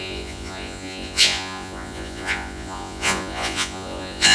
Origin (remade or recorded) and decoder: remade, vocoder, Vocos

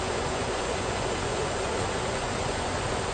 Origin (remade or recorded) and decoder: remade, vocoder, Vocos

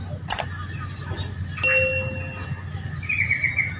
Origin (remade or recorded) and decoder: recorded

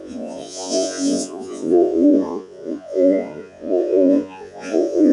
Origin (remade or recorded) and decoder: remade, vocoder, Vocos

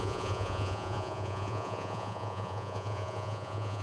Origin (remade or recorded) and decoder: remade, vocoder, Vocos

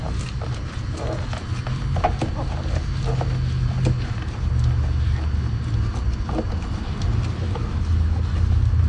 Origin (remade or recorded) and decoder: recorded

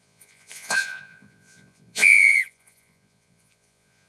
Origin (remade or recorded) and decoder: remade, vocoder, Vocos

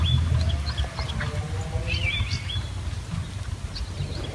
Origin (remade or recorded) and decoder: recorded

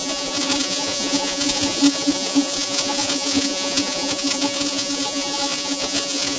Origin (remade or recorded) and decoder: remade, vocoder, Vocos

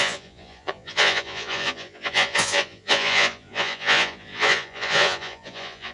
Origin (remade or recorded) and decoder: remade, vocoder, Vocos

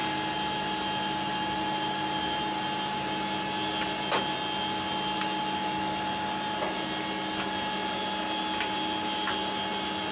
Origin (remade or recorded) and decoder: recorded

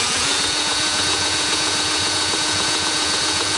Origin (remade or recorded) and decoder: remade, vocoder, Vocos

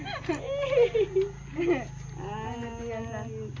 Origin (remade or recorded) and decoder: recorded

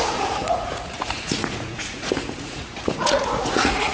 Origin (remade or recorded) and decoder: remade, vocoder, Vocos